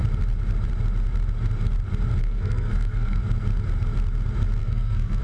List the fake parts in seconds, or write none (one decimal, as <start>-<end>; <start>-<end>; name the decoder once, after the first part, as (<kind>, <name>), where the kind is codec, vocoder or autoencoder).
2.2-3.2 (codec, SNAC); 4.6-5.2